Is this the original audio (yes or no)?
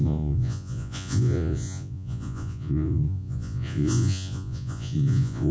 no